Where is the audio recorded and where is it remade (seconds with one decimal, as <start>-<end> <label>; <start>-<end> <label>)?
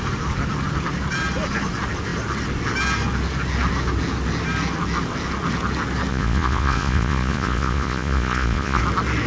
0.0-6.1 recorded; 6.1-8.8 remade; 8.8-9.3 recorded